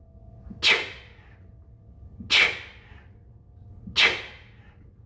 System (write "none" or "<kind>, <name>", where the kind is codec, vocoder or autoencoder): none